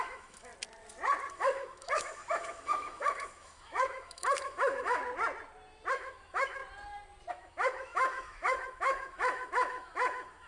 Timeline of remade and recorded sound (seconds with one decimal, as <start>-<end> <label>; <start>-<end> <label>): 0.0-0.5 remade; 0.5-1.3 recorded; 1.3-5.0 remade; 5.0-5.9 recorded; 5.9-6.6 remade; 6.6-7.3 recorded; 7.3-10.5 remade